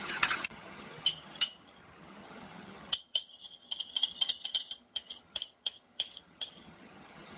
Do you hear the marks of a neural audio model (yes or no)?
yes